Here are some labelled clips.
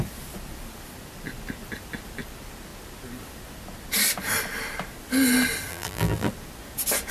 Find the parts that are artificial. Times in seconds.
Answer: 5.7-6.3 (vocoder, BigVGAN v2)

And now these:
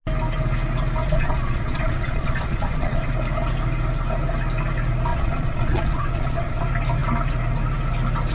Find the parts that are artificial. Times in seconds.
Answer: 1.0-3.1 (vocoder, Vocos); 5.1-6.6

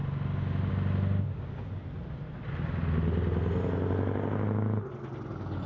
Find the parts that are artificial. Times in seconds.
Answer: none

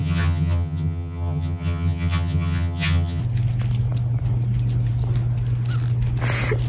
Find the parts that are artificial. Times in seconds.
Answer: 0.0-3.2 (vocoder, HiFi-GAN)

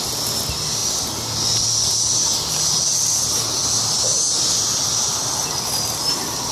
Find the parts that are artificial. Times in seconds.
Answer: none

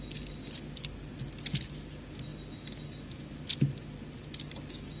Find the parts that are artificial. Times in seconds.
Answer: none